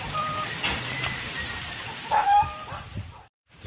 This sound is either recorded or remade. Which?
remade